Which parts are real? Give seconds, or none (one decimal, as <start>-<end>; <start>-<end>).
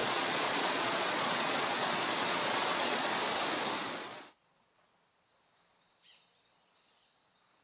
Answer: 3.1-3.8; 4.4-7.6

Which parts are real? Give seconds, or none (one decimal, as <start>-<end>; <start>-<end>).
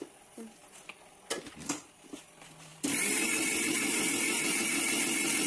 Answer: 0.0-2.7; 4.1-5.5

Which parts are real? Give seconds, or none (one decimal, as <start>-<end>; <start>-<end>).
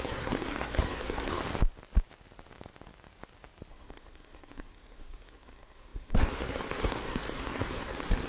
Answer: 1.4-3.7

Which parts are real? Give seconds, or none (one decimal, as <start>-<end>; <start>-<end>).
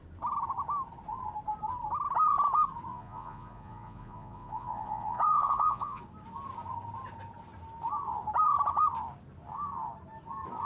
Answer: 0.0-2.9; 6.0-10.7